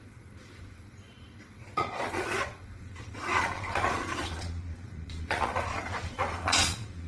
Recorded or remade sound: remade